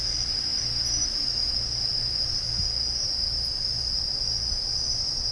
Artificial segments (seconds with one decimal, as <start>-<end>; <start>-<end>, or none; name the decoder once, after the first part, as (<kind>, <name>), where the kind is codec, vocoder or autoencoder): none